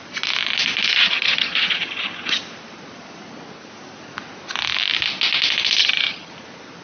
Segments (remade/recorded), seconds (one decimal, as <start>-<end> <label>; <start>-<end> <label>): 0.0-0.9 recorded; 0.9-2.4 remade; 2.4-5.8 recorded; 5.8-6.3 remade; 6.3-6.8 recorded